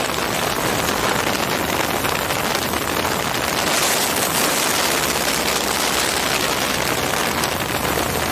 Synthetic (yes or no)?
no